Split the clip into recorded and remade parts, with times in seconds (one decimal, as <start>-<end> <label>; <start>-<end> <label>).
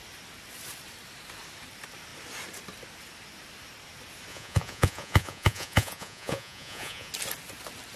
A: 0.0-4.3 recorded; 4.3-7.1 remade; 7.1-8.0 recorded